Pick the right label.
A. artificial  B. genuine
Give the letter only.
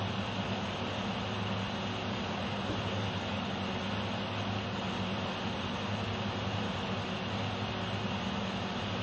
B